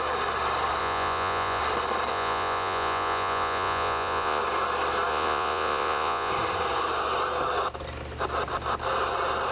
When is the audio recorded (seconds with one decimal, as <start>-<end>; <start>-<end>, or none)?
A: 0.0-0.8; 1.6-2.1; 4.4-5.1; 6.3-9.5